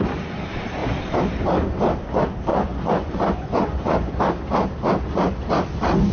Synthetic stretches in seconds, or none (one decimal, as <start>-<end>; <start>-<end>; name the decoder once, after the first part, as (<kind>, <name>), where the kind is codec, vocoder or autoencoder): 2.5-4.2 (vocoder, Vocos)